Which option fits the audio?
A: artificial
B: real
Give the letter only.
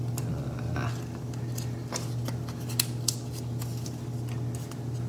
B